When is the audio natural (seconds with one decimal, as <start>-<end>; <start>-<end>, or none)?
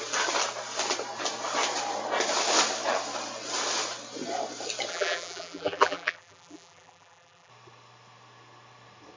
0.0-4.9; 7.5-9.2